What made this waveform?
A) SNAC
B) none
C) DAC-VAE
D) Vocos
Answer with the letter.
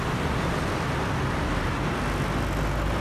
B